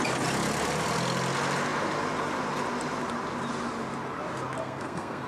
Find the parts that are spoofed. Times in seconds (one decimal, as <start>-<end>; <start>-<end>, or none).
4.6-5.3